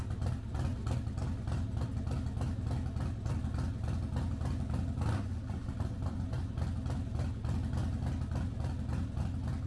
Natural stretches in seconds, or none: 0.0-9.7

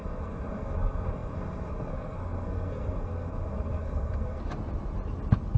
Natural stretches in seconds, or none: 4.4-5.6

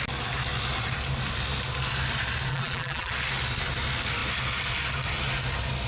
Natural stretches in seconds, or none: 0.0-2.5; 3.1-5.9

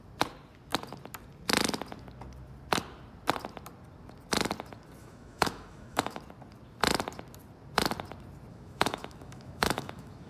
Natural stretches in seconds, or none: 0.0-5.0; 6.2-8.5

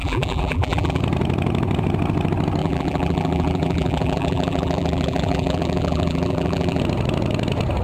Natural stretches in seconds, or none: 1.0-2.6; 6.8-7.8